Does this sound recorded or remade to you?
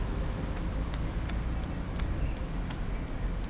recorded